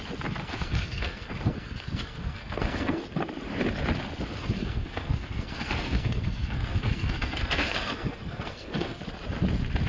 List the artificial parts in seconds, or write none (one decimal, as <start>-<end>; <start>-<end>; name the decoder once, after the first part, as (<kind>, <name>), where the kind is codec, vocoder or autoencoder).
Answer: 0.4-3.0 (codec, SNAC); 4.4-9.0